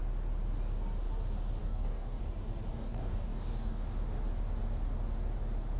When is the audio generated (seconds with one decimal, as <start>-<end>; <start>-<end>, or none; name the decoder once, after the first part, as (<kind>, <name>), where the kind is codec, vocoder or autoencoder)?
1.6-2.2 (codec, DAC); 2.7-3.9